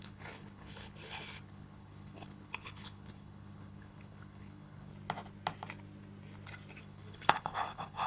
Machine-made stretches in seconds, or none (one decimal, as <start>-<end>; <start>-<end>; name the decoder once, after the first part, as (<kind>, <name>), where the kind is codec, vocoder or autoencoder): 0.0-4.9 (codec, HILCodec); 6.8-8.1